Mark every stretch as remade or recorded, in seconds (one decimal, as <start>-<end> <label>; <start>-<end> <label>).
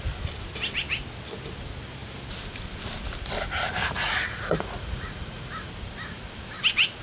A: 0.0-3.8 recorded; 3.8-5.7 remade; 5.7-7.0 recorded